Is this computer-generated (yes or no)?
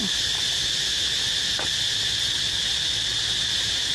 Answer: no